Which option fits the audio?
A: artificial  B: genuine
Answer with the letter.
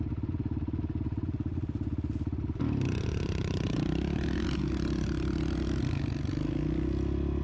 B